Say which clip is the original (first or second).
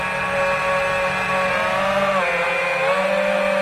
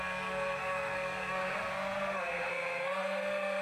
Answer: first